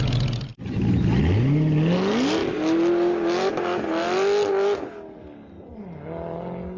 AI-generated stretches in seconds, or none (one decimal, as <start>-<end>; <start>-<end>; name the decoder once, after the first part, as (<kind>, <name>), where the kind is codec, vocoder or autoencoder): none